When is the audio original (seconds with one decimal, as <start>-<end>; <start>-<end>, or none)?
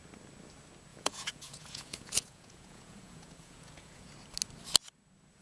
0.0-0.9; 4.1-5.4